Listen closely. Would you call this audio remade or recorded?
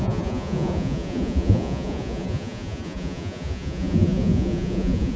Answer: remade